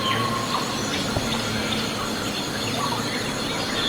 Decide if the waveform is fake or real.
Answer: real